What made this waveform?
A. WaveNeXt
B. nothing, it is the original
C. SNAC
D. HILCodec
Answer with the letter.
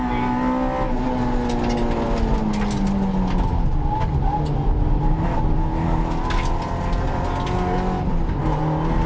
B